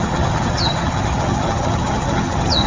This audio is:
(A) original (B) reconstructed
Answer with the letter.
B